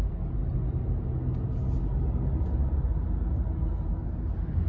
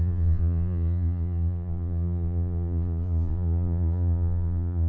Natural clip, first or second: first